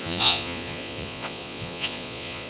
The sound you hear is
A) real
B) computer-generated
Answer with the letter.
B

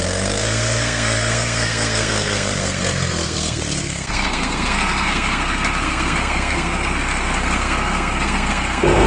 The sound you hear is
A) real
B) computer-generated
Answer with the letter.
B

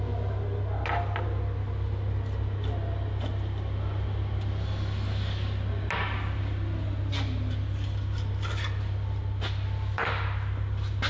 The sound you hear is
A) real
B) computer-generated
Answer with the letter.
A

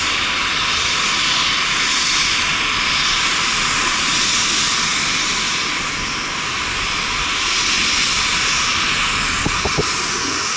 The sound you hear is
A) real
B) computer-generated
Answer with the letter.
A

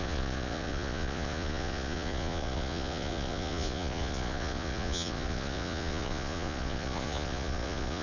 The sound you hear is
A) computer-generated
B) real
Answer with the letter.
A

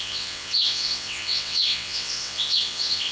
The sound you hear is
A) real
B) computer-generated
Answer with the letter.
B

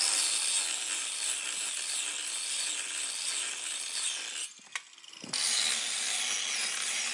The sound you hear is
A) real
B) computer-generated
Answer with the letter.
A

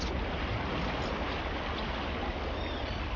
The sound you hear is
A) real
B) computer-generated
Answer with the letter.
A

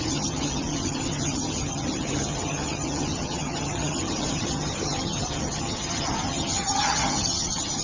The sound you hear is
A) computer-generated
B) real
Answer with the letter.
A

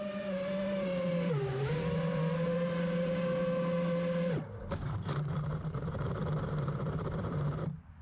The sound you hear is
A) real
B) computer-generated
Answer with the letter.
B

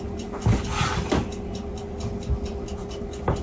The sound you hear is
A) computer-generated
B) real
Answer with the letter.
B